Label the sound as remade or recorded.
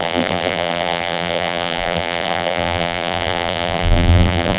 remade